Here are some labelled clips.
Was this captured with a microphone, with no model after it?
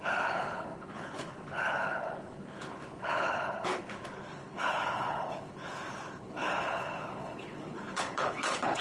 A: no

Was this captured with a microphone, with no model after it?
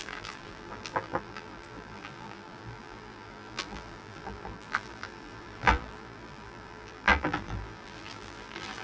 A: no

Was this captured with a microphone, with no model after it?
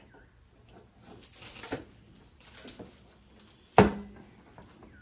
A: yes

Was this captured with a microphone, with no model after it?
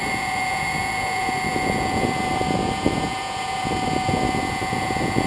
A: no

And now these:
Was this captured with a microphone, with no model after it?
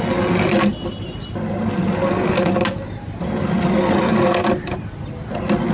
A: yes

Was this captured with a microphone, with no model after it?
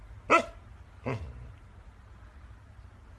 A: yes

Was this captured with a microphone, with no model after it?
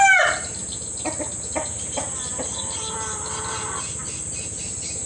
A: yes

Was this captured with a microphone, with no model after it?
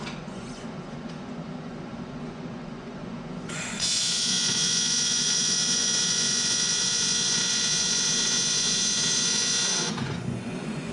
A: no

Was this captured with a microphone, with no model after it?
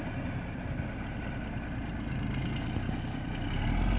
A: yes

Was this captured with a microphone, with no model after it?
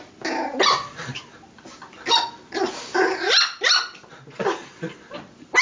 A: yes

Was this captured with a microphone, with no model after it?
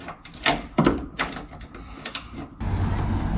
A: yes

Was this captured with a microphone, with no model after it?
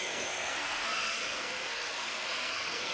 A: no